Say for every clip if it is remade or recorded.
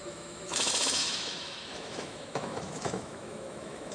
remade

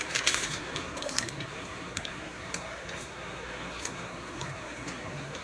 remade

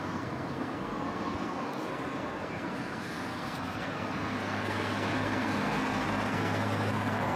remade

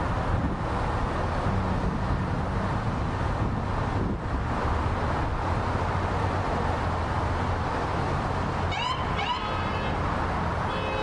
recorded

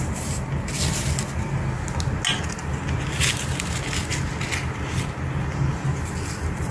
recorded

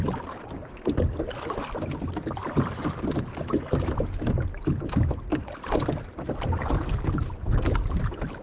recorded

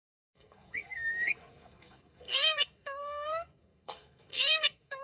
remade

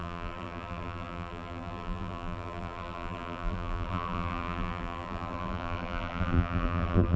remade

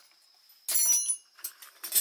recorded